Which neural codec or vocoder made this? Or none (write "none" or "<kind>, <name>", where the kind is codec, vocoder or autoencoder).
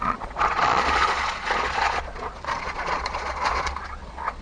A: vocoder, Vocos